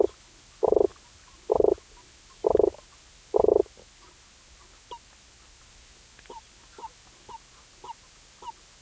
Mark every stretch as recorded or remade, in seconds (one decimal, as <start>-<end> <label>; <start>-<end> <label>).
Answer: 0.0-8.8 recorded